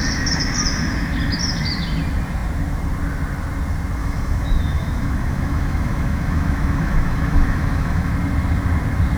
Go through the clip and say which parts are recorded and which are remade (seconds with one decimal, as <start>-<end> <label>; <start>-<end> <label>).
0.0-4.0 recorded; 4.0-8.1 remade; 8.1-9.2 recorded